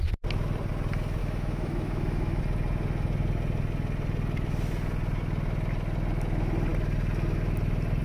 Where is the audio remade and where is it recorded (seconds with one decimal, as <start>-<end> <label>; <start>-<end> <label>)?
0.0-1.2 recorded; 1.2-2.4 remade; 2.4-8.0 recorded

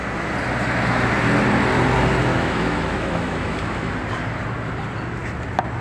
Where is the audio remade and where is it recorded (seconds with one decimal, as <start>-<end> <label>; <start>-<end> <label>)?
0.0-2.3 recorded; 2.3-3.9 remade; 3.9-5.8 recorded

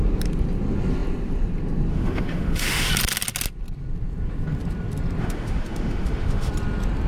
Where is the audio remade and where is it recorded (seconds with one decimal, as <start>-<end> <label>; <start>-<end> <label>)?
0.0-1.9 recorded; 1.9-2.9 remade; 2.9-5.2 recorded; 5.2-6.5 remade; 6.5-7.1 recorded

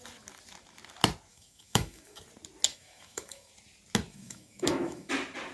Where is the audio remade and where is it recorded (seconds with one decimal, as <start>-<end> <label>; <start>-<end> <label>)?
0.0-1.3 recorded; 1.3-2.2 remade; 2.2-2.7 recorded; 2.7-3.5 remade; 3.5-4.1 recorded; 4.1-5.1 remade; 5.1-5.5 recorded

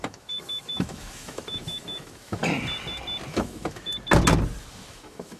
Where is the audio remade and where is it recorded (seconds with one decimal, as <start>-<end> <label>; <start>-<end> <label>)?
0.0-2.4 remade; 2.4-3.3 recorded; 3.3-3.9 remade; 3.9-4.9 recorded; 4.9-5.4 remade

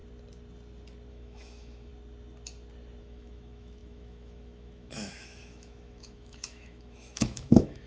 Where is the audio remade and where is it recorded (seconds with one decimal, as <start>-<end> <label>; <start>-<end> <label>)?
0.0-1.1 recorded; 1.1-1.9 remade; 1.9-3.0 recorded; 3.0-7.9 remade

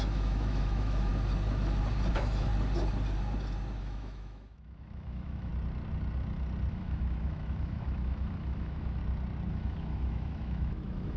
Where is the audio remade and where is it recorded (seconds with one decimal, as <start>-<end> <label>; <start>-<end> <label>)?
0.0-1.1 remade; 1.1-2.1 recorded; 2.1-2.5 remade; 2.5-3.8 recorded; 3.8-5.5 remade; 5.5-6.7 recorded; 6.7-9.0 remade; 9.0-9.5 recorded; 9.5-11.2 remade